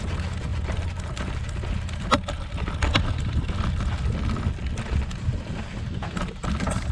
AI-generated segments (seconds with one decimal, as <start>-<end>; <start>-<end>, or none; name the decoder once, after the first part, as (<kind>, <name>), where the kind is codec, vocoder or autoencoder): 0.5-4.6 (vocoder, BigVGAN v2)